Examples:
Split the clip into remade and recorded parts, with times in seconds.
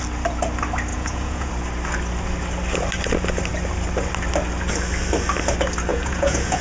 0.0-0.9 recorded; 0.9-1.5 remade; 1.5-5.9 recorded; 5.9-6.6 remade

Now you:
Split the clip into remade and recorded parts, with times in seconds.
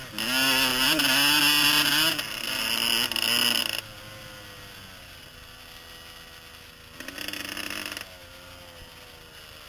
0.0-9.7 recorded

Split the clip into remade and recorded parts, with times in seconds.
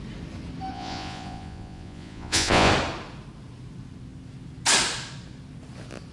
0.0-0.7 recorded; 0.7-2.7 remade; 2.7-6.1 recorded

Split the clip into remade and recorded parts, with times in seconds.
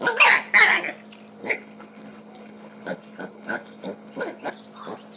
0.0-1.4 recorded; 1.4-4.5 remade; 4.5-5.2 recorded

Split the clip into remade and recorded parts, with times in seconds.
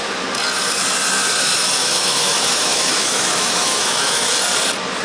0.0-1.8 recorded; 1.8-4.3 remade; 4.3-5.0 recorded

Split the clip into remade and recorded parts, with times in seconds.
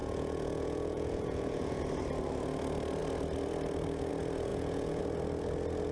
0.0-1.8 remade; 1.8-4.5 recorded; 4.5-5.0 remade; 5.0-5.9 recorded